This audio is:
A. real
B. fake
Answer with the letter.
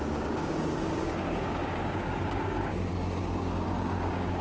B